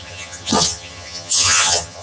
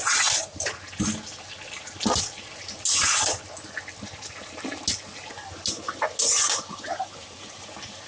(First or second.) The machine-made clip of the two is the first